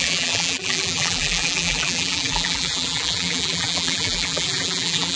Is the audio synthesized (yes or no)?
yes